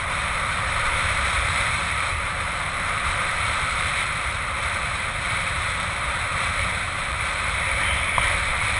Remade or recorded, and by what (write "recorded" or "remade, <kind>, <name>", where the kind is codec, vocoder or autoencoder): remade, vocoder, BigVGAN v2